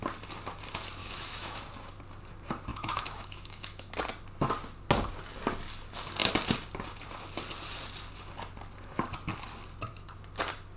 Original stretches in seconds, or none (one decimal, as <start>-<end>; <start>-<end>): 0.0-1.0; 1.6-2.7; 3.9-10.8